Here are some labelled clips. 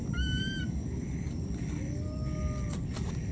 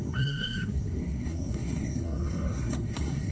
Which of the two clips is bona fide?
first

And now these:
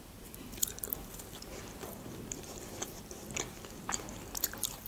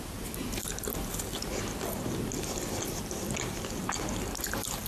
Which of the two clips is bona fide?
second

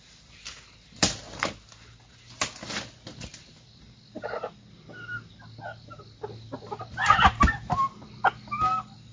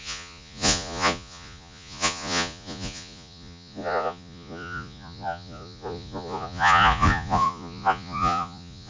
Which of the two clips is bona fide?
first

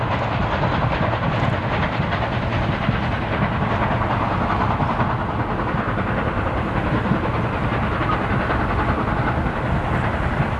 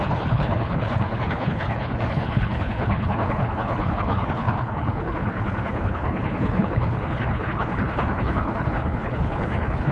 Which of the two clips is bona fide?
first